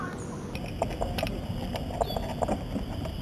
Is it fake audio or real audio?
real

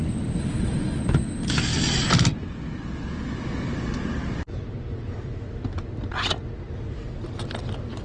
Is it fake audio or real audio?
real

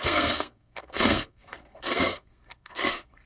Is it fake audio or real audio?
fake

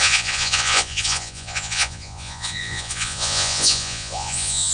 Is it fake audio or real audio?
fake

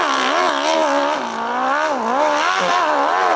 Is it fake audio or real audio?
real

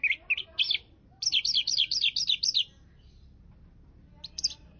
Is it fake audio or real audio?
real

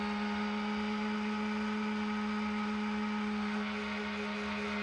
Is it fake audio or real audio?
real